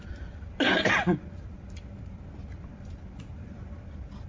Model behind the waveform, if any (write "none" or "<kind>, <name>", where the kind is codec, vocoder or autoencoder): none